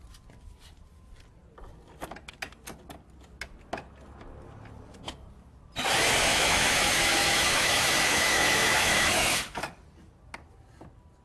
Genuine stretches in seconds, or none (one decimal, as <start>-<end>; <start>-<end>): 0.0-6.3; 9.6-11.2